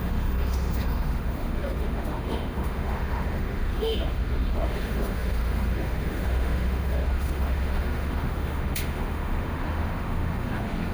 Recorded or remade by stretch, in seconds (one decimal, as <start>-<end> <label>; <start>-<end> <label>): 0.0-10.9 remade